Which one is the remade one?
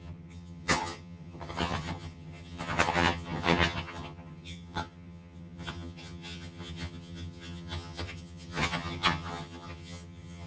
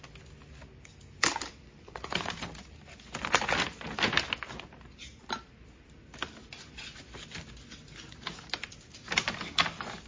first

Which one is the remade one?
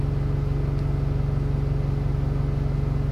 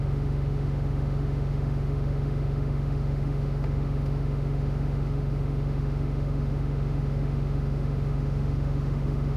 second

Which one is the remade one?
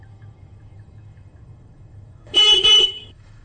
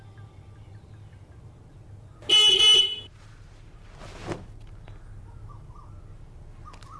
first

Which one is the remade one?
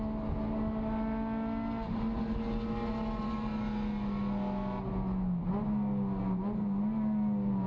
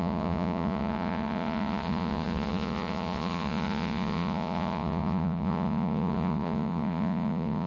second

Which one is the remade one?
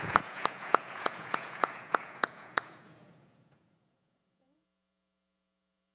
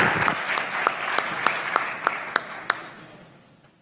first